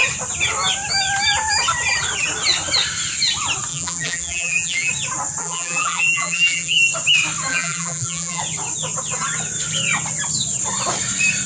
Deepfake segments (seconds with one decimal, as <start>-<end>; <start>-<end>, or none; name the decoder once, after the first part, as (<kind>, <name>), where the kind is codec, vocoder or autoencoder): 3.7-4.9 (vocoder, BigVGAN v2); 5.4-6.8; 7.5-8.4